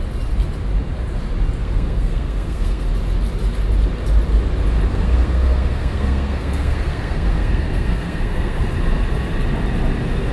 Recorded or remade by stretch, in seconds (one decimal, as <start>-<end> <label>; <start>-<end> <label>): 0.0-1.6 recorded; 1.6-2.9 remade; 2.9-4.9 recorded; 4.9-8.6 remade; 8.6-10.3 recorded